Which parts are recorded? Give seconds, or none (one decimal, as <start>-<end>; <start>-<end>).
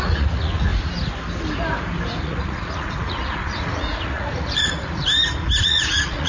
0.7-2.2; 5.0-5.6